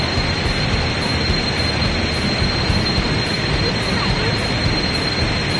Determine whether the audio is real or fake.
real